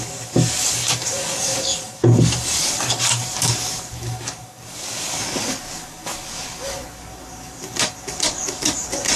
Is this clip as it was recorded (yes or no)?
no